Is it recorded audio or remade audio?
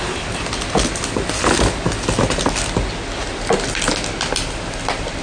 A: recorded